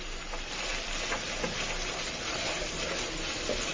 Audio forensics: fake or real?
real